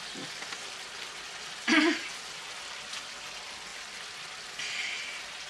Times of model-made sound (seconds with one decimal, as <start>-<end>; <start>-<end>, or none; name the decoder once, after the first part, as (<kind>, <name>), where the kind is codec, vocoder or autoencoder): 2.1-3.3 (vocoder, BigVGAN v2); 3.7-4.4